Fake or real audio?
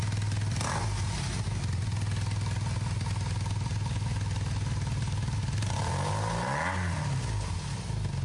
real